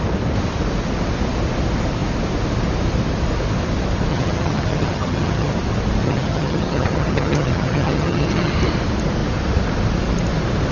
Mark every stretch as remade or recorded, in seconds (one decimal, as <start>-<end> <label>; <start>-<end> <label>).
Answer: 0.0-4.1 recorded; 4.1-5.5 remade; 5.5-6.0 recorded; 6.0-8.5 remade; 8.5-10.7 recorded